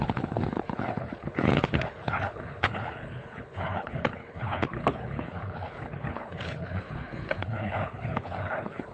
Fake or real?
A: fake